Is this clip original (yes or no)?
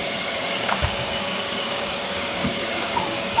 no